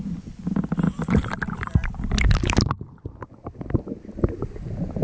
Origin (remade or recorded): recorded